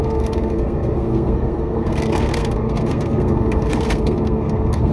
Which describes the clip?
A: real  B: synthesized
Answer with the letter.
B